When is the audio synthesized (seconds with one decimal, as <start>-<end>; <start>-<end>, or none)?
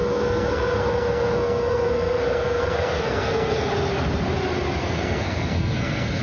0.0-3.7; 4.8-6.2